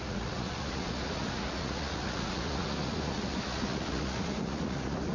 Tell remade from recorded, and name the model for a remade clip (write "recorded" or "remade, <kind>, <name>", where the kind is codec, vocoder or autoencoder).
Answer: remade, vocoder, Vocos